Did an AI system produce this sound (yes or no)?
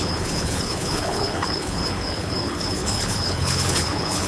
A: yes